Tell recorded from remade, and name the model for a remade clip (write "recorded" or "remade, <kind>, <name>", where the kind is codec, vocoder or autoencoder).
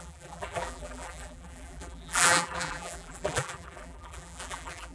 remade, vocoder, BigVGAN v2